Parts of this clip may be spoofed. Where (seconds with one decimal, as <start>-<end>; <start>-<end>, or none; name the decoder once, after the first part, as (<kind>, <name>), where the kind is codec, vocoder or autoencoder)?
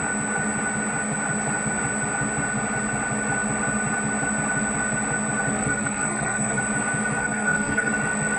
5.5-6.6 (codec, SNAC); 7.2-7.9